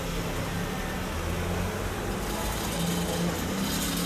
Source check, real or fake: real